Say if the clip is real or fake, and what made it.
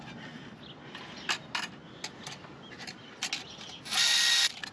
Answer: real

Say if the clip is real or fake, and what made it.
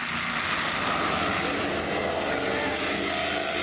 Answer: real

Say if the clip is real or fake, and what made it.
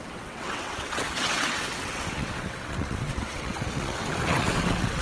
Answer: fake, vocoder, WaveNeXt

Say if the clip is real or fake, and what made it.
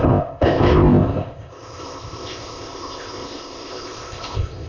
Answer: fake, codec, ZipCodec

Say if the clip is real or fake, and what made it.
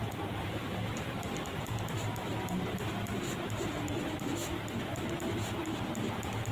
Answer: fake, vocoder, BigVGAN v2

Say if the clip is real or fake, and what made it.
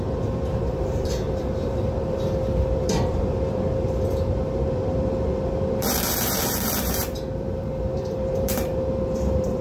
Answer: fake, vocoder, BigVGAN v2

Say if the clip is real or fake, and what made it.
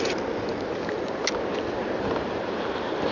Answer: real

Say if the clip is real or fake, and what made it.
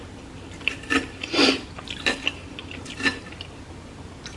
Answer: fake, vocoder, BigVGAN v2